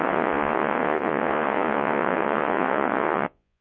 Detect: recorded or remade remade